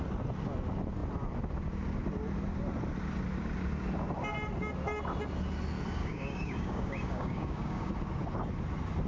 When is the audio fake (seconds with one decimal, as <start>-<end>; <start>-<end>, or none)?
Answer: 6.0-7.9